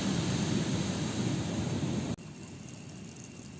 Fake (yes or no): no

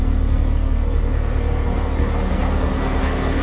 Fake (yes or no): yes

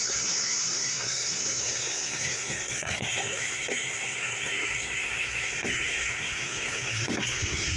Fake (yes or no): yes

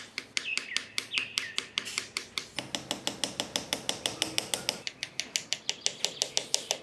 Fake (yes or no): no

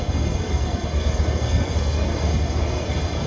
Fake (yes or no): yes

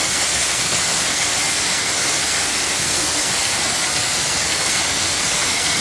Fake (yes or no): yes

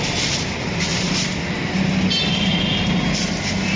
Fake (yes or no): no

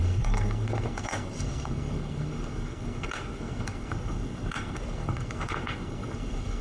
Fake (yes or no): yes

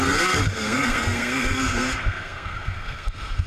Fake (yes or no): yes